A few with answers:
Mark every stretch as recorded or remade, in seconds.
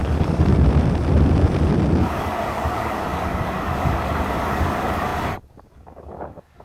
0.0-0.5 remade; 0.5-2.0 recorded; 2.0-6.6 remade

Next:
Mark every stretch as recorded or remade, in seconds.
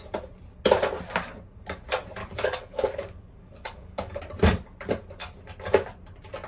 0.0-2.2 recorded; 2.2-4.2 remade; 4.2-6.5 recorded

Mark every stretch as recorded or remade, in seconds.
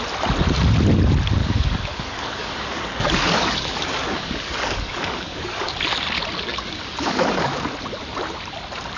0.0-1.4 recorded; 1.4-5.8 remade; 5.8-6.5 recorded; 6.5-7.7 remade; 7.7-9.0 recorded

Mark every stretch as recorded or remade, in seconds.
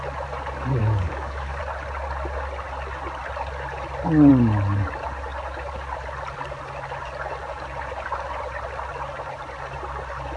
0.0-0.8 recorded; 0.8-1.6 remade; 1.6-10.4 recorded